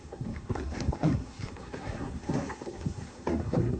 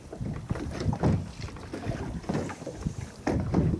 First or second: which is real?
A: second